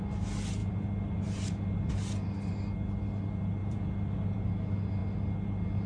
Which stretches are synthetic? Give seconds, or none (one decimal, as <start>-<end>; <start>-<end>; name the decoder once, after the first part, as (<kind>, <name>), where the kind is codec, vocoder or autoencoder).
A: 3.6-4.5 (vocoder, BigVGAN v2)